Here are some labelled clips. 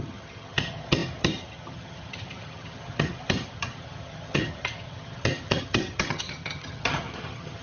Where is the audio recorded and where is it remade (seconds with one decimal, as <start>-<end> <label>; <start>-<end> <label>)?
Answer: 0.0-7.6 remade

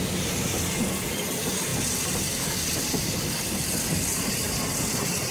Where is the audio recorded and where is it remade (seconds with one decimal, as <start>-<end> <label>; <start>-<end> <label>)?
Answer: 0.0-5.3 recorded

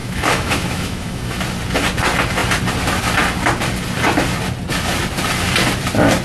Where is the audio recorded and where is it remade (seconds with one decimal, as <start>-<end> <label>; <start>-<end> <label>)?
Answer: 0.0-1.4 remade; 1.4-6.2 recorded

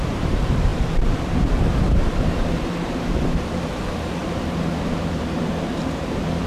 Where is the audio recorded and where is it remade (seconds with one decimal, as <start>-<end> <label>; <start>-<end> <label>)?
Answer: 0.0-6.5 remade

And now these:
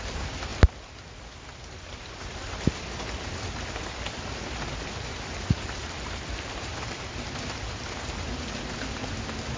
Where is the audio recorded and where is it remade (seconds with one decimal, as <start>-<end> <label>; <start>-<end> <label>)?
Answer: 0.0-0.5 remade; 0.5-1.4 recorded; 1.4-9.6 remade

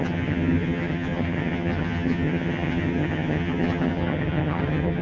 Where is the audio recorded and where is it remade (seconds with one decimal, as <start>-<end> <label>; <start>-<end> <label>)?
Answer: 0.0-5.0 remade

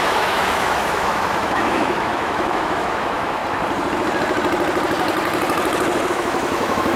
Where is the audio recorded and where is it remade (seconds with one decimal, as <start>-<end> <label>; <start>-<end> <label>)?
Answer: 0.0-3.4 remade; 3.4-6.1 recorded; 6.1-7.0 remade

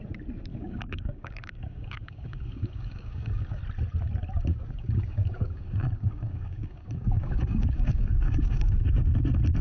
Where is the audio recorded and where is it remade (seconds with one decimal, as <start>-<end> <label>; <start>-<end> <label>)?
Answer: 0.0-0.5 recorded; 0.5-3.6 remade; 3.6-4.5 recorded; 4.5-9.0 remade; 9.0-9.6 recorded